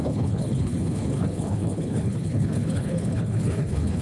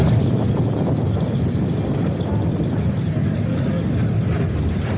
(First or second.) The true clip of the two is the second